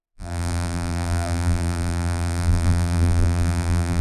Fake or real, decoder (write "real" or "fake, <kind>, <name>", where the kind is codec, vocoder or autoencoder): fake, vocoder, BigVGAN v2